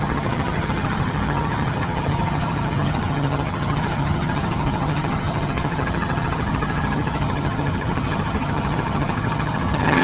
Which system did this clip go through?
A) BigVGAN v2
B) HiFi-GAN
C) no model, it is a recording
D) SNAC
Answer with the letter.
B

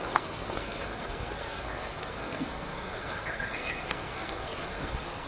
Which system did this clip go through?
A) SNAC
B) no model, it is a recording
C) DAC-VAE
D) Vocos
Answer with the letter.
A